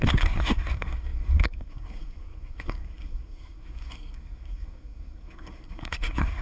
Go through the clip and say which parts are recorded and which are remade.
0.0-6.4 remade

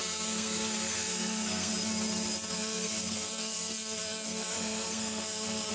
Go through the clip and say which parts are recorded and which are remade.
0.0-1.7 remade; 1.7-2.5 recorded; 2.5-5.7 remade